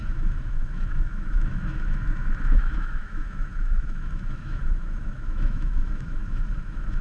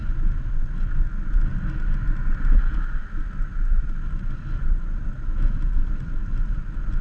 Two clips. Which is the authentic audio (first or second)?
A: second